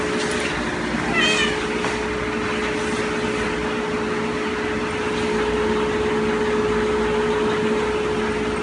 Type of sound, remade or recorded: recorded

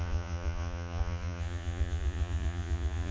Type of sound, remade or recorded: remade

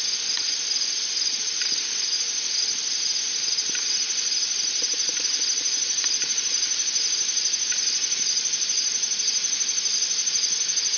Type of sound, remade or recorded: recorded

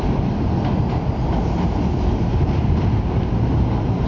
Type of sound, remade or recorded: recorded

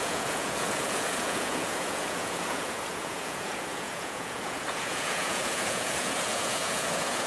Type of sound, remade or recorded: remade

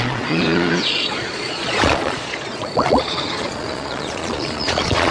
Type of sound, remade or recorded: remade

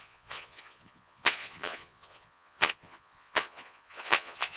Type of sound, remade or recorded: remade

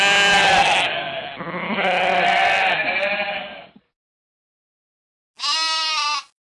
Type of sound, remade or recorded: recorded